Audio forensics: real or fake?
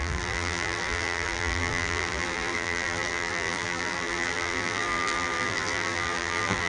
fake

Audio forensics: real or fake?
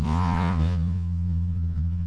fake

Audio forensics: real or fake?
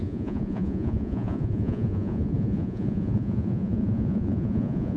fake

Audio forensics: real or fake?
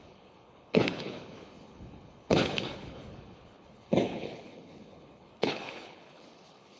fake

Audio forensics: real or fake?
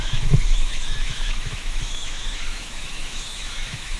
fake